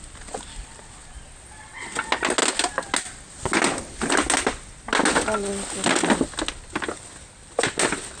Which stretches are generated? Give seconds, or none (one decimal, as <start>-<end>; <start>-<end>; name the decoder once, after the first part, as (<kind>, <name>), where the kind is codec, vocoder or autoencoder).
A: none